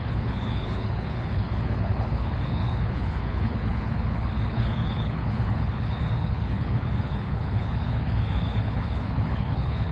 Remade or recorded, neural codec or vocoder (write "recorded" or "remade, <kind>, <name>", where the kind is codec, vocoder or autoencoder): remade, codec, HILCodec